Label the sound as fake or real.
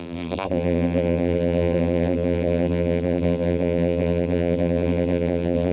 fake